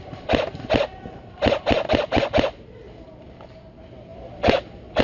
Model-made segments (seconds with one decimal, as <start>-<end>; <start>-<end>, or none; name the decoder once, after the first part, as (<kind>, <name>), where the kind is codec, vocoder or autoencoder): none